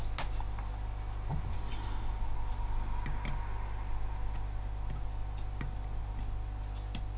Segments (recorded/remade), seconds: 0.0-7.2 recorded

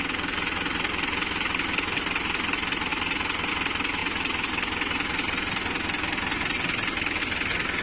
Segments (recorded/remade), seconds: 0.0-7.8 recorded

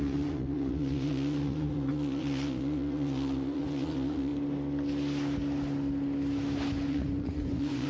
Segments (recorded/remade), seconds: 0.0-4.3 remade; 4.3-6.9 recorded; 6.9-7.9 remade

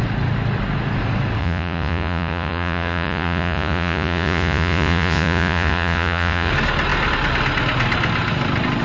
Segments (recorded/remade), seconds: 0.0-1.4 recorded; 1.4-6.5 remade; 6.5-8.8 recorded

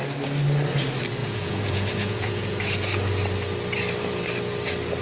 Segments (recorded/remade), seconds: 0.0-1.2 recorded; 1.2-2.6 remade; 2.6-5.0 recorded

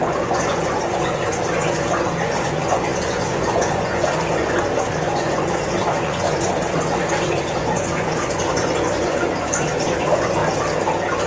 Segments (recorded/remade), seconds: 0.0-10.4 remade; 10.4-11.3 recorded

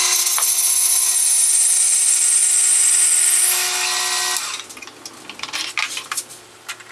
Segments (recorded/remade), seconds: 0.0-6.9 recorded

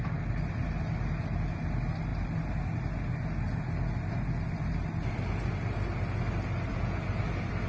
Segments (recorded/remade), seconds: 0.0-6.7 recorded; 6.7-7.2 remade; 7.2-7.7 recorded